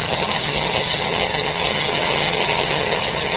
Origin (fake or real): fake